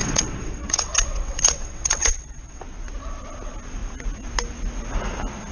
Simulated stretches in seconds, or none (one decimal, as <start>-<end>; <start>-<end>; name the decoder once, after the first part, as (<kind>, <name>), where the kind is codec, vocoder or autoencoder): 0.0-2.6 (vocoder, WaveNeXt)